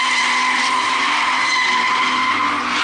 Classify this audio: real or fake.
real